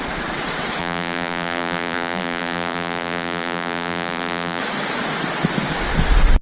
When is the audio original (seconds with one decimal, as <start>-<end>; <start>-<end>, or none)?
0.0-0.8; 4.6-6.4